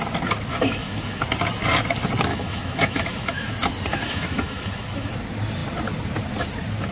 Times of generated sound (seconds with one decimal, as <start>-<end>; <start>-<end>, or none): 0.5-1.2; 2.3-3.5; 3.9-5.1